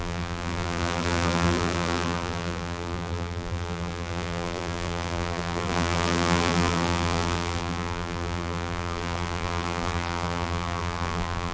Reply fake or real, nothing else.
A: fake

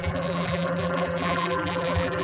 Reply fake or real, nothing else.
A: fake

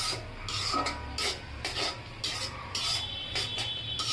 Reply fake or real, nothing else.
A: real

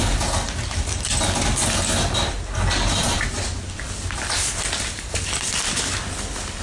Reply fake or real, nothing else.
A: real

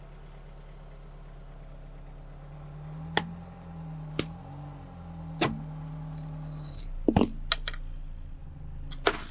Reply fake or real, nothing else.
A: real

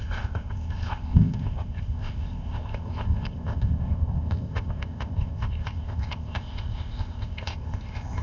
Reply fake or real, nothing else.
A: fake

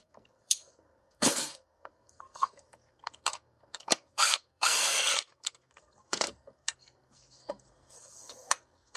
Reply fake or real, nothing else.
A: fake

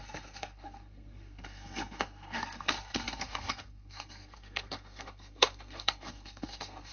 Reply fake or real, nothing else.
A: fake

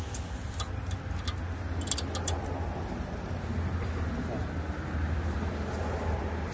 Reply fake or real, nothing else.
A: real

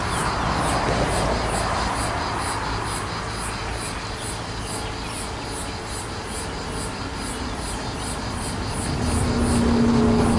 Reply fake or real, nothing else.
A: real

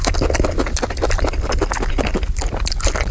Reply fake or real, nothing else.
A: real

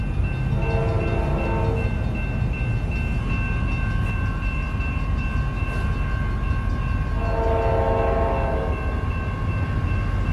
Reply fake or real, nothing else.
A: real